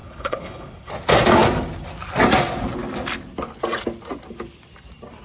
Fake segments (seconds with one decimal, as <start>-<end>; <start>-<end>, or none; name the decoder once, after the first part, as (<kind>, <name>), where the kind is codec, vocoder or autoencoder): 0.0-0.9 (codec, HILCodec)